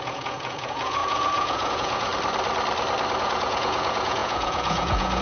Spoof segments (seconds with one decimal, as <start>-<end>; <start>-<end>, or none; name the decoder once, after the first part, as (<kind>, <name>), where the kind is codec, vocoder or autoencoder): 0.0-2.1 (vocoder, Vocos); 3.2-5.2